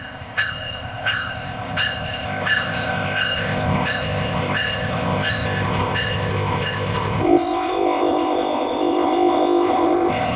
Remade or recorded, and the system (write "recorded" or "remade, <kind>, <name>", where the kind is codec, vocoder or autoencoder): remade, codec, ZipCodec